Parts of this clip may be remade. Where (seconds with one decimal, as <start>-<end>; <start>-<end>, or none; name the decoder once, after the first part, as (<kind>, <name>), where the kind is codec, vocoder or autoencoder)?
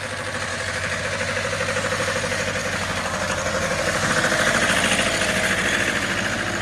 0.5-1.0 (codec, DAC); 2.6-4.1